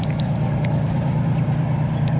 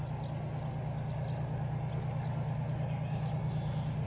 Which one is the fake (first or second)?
first